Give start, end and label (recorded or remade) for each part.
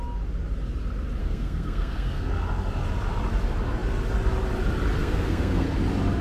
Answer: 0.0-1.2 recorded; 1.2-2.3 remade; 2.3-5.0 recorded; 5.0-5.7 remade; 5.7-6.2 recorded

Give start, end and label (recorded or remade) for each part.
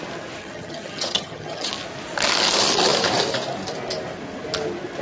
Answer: 0.0-0.4 recorded; 0.4-1.7 remade; 1.7-5.0 recorded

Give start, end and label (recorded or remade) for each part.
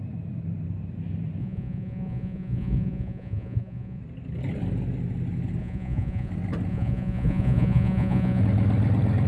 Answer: 0.0-1.4 recorded; 1.4-4.0 remade; 4.0-5.6 recorded; 5.6-6.3 remade; 6.3-6.7 recorded; 6.7-8.4 remade; 8.4-9.3 recorded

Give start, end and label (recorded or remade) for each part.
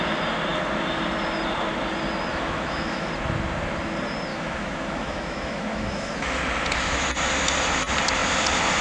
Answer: 0.0-2.3 recorded; 2.3-3.1 remade; 3.1-4.3 recorded; 4.3-6.4 remade; 6.4-8.8 recorded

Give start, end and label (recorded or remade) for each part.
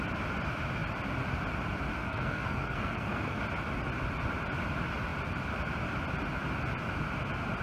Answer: 0.0-2.0 recorded; 2.0-3.4 remade; 3.4-7.6 recorded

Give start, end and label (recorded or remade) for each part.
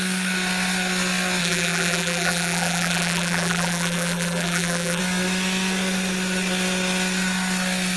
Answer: 0.0-1.4 recorded; 1.4-5.0 remade; 5.0-8.0 recorded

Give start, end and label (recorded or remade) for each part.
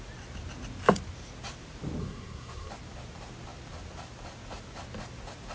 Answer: 0.0-2.0 recorded; 2.0-2.7 remade; 2.7-5.5 recorded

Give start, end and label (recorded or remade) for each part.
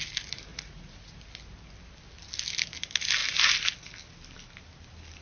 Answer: 0.0-0.5 recorded; 0.5-1.2 remade; 1.2-5.2 recorded